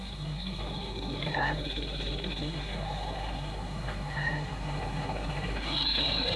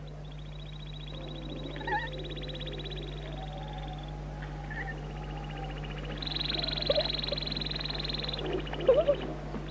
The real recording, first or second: second